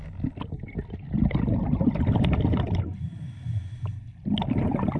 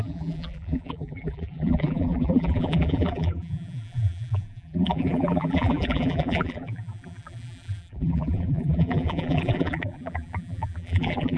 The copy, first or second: second